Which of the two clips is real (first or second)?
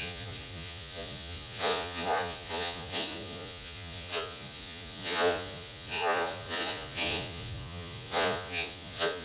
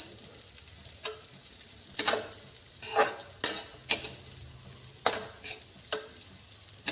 second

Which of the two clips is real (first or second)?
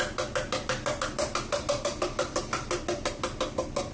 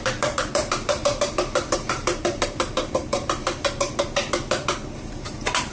first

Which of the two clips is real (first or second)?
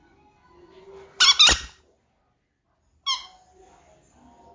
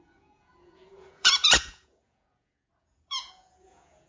first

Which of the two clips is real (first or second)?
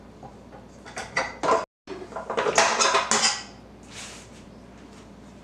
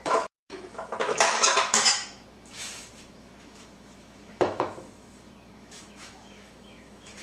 first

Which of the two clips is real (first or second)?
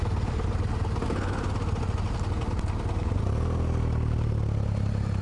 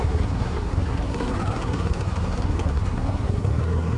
first